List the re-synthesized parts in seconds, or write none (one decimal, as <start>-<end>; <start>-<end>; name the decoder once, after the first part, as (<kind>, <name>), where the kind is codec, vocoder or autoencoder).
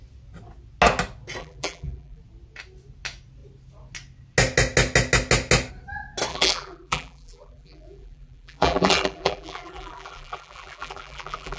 1.4-2.2 (vocoder, BigVGAN v2); 6.3-11.6